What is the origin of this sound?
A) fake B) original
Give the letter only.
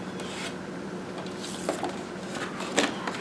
B